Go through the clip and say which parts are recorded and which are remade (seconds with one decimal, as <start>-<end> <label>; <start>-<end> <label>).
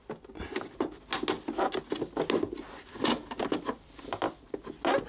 0.0-5.1 recorded